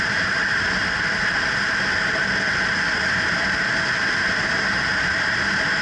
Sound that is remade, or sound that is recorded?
recorded